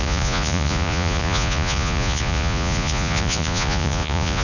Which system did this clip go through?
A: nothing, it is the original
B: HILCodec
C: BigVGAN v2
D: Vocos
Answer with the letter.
D